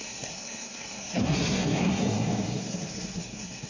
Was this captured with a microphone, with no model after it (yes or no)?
no